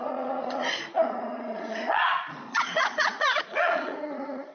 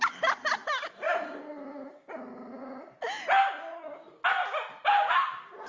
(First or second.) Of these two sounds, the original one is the second